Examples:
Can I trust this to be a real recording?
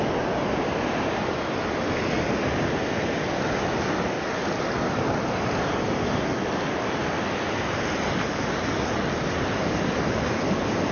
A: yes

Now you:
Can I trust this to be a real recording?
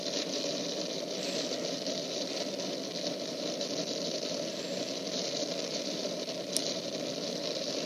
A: no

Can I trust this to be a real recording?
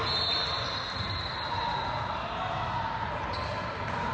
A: yes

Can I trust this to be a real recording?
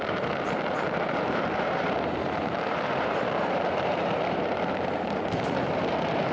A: no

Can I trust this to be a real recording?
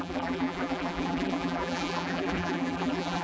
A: no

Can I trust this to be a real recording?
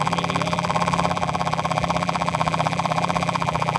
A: no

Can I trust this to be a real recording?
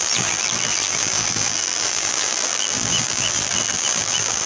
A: no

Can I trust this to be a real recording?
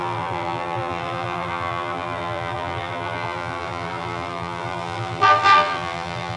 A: no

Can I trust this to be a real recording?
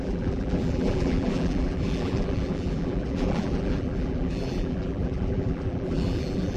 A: no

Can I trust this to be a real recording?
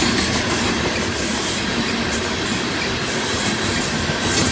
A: no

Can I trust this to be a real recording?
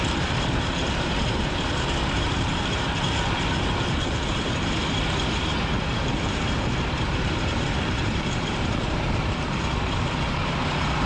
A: no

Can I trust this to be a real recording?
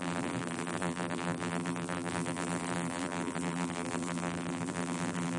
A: no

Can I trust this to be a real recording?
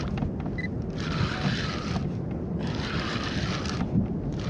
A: yes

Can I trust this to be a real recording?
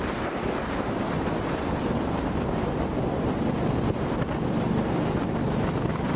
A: yes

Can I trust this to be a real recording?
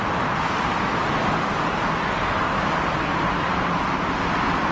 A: yes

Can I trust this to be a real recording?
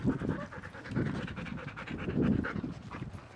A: yes